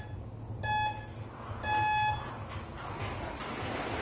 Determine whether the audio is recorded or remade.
recorded